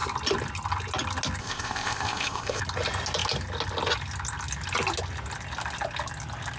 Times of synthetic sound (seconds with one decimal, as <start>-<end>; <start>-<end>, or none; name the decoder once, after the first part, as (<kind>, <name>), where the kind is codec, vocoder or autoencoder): 1.4-2.6 (codec, ZipCodec)